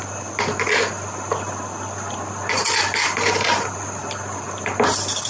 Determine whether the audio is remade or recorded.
recorded